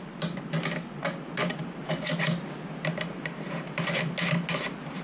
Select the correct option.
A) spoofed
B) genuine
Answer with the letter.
B